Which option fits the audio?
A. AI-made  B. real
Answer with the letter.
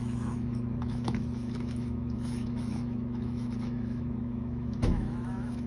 A